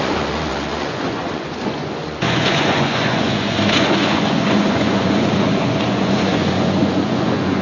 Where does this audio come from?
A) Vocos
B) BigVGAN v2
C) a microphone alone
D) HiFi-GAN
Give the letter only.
A